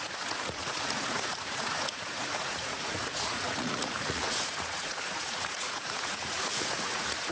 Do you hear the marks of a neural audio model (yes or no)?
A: yes